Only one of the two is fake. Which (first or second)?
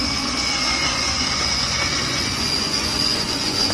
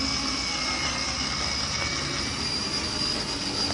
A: first